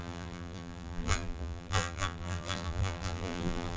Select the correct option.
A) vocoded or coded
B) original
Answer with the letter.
A